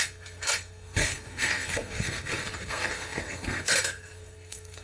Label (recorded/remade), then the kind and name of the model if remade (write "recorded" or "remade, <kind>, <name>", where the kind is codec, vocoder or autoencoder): remade, codec, SNAC